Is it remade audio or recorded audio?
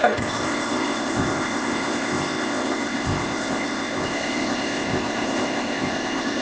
remade